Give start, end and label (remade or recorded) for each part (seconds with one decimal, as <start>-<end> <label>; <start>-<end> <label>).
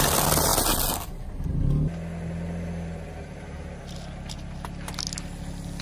0.0-5.8 recorded